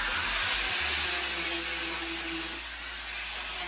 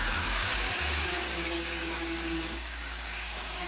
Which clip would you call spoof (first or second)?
second